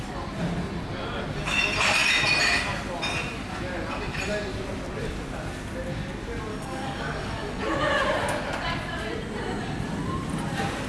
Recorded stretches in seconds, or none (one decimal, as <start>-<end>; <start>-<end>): 0.0-6.5; 7.6-10.9